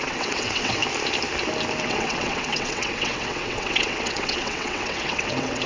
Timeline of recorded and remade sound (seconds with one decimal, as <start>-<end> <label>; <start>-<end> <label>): 0.0-0.8 remade; 0.8-1.8 recorded; 1.8-5.7 remade